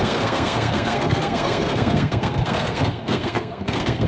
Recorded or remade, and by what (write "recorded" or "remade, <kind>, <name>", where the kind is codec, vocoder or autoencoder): remade, codec, SNAC